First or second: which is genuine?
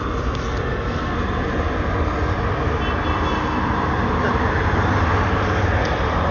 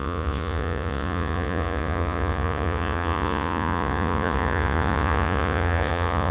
first